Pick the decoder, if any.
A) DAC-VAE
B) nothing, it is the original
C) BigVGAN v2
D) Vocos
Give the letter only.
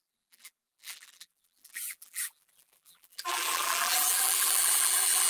C